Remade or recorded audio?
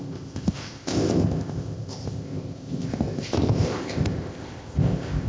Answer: remade